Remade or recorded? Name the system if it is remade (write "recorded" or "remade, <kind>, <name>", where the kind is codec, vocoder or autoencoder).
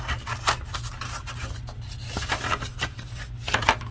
recorded